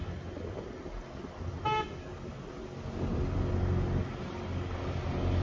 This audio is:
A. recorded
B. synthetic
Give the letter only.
A